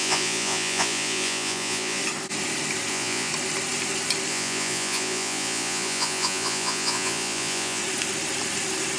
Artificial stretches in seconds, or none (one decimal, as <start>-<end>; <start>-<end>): 0.0-2.0; 2.9-3.3; 4.3-7.8